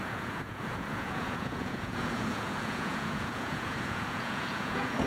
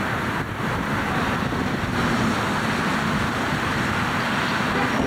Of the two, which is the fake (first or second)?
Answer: first